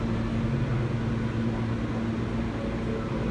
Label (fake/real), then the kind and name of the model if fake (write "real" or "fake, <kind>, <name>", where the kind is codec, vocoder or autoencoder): real